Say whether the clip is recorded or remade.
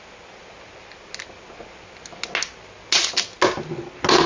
recorded